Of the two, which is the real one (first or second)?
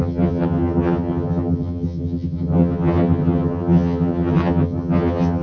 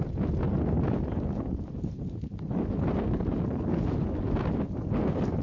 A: second